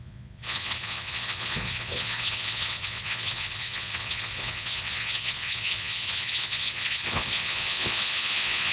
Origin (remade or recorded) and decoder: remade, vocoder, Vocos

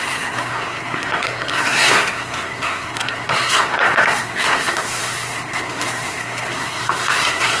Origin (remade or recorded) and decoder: remade, codec, SNAC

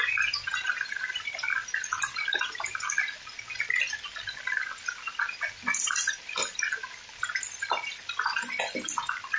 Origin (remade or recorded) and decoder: recorded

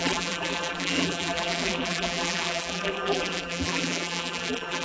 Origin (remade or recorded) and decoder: remade, vocoder, BigVGAN v2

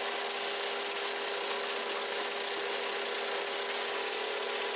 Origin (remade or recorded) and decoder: recorded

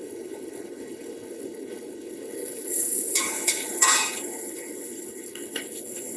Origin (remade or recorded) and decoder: remade, codec, HILCodec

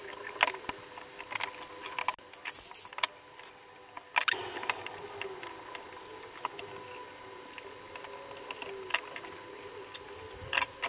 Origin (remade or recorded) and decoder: recorded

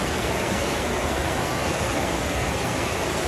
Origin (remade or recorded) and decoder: remade, codec, SNAC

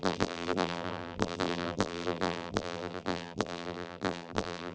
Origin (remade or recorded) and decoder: remade, vocoder, BigVGAN v2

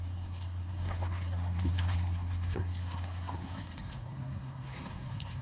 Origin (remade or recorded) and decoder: remade, codec, SNAC